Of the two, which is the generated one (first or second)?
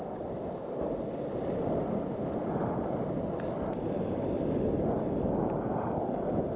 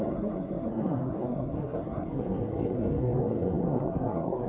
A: second